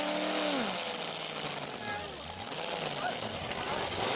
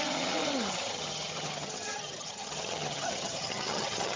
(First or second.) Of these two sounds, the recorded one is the first